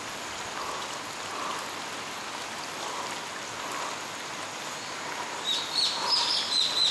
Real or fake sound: real